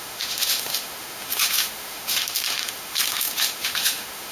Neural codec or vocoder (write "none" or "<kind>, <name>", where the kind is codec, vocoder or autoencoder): autoencoder, DAC-VAE